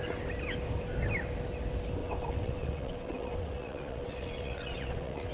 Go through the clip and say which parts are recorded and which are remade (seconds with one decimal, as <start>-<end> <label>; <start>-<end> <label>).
0.0-2.0 recorded; 2.0-5.3 remade